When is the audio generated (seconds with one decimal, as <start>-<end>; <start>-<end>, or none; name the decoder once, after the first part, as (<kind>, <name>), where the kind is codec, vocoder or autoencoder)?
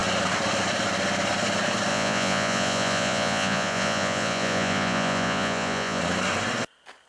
1.9-6.0 (vocoder, Vocos)